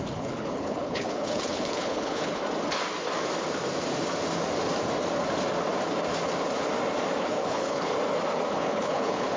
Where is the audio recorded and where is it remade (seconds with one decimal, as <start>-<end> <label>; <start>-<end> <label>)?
0.0-2.4 remade; 2.4-7.2 recorded; 7.2-7.9 remade; 7.9-8.5 recorded; 8.5-9.4 remade